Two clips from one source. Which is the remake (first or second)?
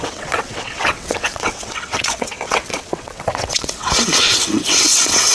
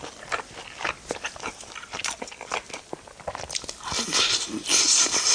first